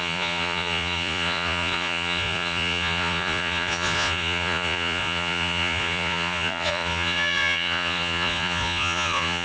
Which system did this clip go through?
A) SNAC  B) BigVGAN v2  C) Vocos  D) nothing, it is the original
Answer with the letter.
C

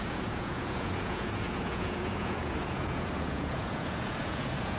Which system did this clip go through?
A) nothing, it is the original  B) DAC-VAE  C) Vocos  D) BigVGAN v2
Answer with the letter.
C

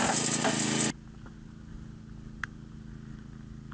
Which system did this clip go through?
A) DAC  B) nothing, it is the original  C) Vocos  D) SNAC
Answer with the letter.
B